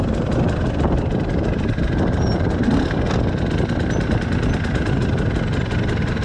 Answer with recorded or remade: remade